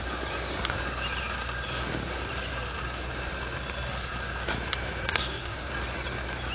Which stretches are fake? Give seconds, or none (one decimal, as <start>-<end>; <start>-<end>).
5.1-5.7